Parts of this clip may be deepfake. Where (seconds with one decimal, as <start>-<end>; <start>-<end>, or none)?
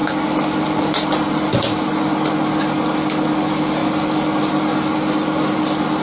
none